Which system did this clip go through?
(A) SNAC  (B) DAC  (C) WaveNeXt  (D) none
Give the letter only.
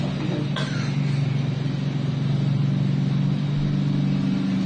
D